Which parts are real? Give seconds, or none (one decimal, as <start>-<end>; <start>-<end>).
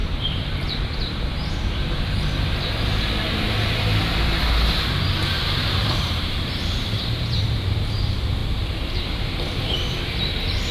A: none